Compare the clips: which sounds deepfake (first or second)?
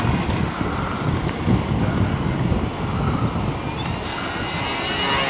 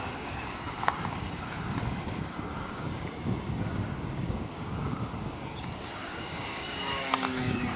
second